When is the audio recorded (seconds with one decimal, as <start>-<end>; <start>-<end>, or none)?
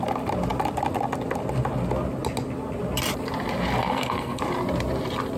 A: 0.0-3.8; 4.4-5.4